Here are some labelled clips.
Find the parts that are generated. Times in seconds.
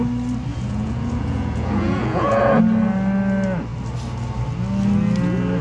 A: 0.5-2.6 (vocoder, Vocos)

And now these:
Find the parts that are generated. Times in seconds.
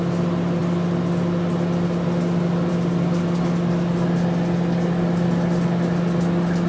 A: none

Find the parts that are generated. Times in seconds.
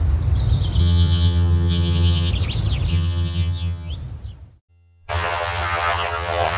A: 0.8-2.3 (vocoder, HiFi-GAN); 2.9-3.9; 4.7-6.6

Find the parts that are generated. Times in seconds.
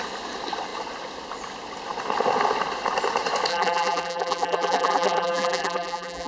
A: 3.5-6.3 (vocoder, BigVGAN v2)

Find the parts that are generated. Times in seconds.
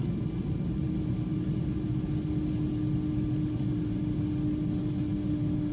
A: none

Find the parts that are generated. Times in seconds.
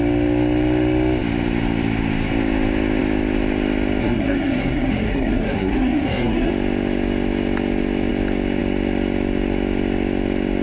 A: 4.0-6.5 (codec, SNAC)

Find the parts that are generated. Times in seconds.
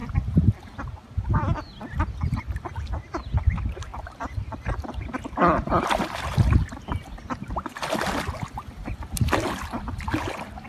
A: none